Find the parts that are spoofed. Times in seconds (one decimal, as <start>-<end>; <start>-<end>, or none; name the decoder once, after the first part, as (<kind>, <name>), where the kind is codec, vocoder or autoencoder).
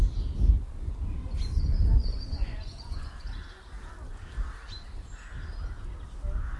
2.1-3.1 (vocoder, Vocos)